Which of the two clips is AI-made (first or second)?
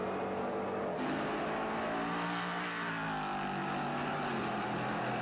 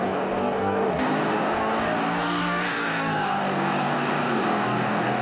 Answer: second